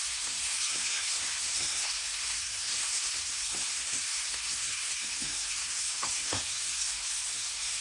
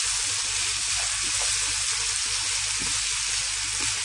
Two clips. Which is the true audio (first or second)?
second